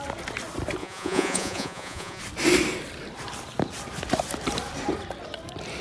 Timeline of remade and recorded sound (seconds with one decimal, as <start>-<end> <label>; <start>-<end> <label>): 0.0-0.8 recorded; 0.8-2.2 remade; 2.2-5.8 recorded